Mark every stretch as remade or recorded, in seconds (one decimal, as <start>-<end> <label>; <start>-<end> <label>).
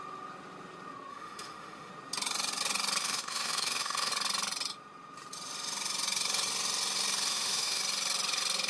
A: 0.0-1.1 recorded; 1.1-1.9 remade; 1.9-3.0 recorded; 3.0-4.1 remade; 4.1-7.3 recorded; 7.3-7.8 remade; 7.8-8.7 recorded